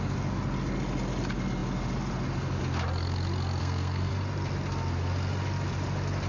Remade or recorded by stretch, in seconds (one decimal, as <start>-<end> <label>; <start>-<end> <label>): 0.0-3.6 recorded; 3.6-4.1 remade; 4.1-6.3 recorded